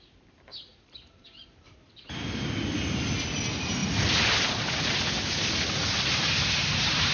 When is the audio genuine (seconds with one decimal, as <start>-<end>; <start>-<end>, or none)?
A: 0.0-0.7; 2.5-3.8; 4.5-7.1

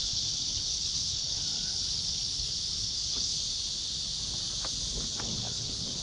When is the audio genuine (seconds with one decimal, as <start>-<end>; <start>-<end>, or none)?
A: 3.3-5.2

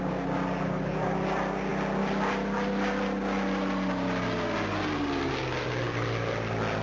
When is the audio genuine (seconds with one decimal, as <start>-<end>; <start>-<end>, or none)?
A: 0.0-6.8

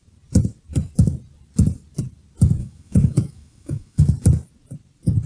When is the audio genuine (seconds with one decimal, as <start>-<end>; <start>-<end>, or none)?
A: 0.0-2.6; 4.0-5.3

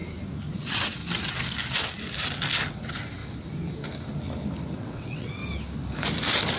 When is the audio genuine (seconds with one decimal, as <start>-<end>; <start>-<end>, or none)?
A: 0.0-0.5; 1.0-2.7; 3.2-4.7; 5.4-6.6

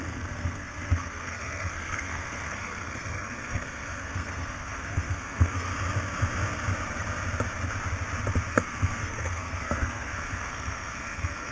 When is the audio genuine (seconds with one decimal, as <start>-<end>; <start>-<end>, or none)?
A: 5.7-8.5

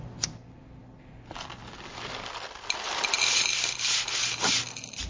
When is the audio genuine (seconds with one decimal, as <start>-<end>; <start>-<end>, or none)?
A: 0.0-5.1

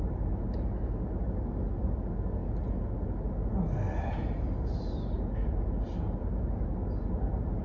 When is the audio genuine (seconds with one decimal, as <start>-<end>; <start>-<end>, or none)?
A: 0.0-7.6